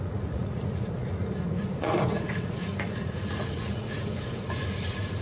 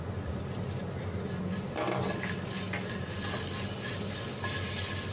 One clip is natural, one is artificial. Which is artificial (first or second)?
first